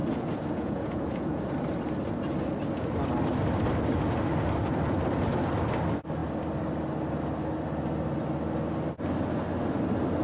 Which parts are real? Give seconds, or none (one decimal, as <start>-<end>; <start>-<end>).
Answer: 1.4-10.2